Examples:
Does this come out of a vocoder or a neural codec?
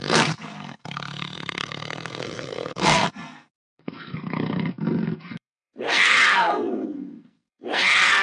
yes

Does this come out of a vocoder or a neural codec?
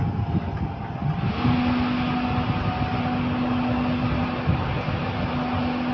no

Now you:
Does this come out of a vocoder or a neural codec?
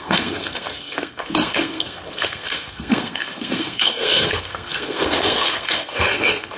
yes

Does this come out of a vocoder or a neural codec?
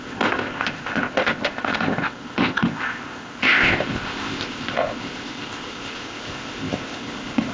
yes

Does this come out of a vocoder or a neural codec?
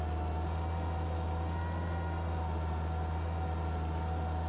no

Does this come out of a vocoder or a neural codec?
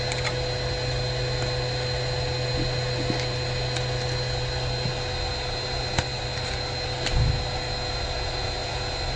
no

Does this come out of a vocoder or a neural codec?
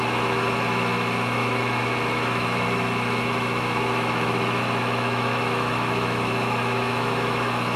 yes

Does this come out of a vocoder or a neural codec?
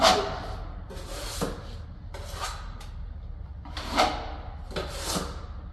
no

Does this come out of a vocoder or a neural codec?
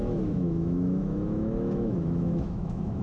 yes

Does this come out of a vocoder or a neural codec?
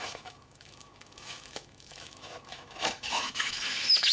yes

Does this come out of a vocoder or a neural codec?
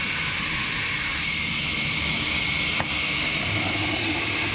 no